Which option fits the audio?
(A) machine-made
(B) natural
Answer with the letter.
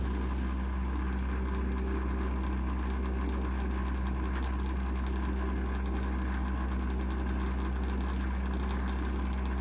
B